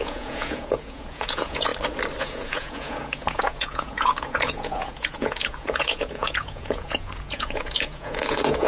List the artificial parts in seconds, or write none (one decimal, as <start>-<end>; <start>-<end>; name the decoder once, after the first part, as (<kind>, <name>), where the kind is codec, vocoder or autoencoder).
0.0-1.7 (vocoder, Vocos); 2.2-8.7

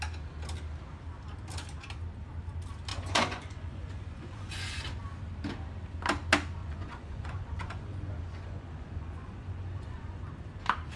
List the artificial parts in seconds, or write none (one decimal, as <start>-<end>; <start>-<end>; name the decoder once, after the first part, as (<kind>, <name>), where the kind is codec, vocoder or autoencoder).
2.9-4.8 (vocoder, Vocos); 6.6-10.3

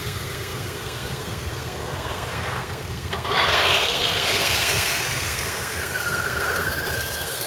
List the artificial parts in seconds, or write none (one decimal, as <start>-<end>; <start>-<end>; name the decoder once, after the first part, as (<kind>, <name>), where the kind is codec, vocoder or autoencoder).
0.0-7.5 (codec, SNAC)

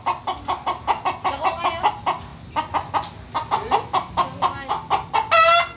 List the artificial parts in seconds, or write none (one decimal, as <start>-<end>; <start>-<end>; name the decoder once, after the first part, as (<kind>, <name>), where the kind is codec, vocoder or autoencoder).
none

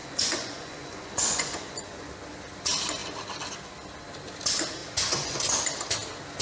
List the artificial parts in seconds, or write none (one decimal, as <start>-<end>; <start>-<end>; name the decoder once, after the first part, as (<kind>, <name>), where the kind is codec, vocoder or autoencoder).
0.0-2.1 (vocoder, Vocos); 4.8-5.6